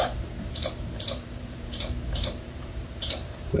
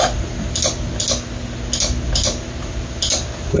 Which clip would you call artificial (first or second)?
first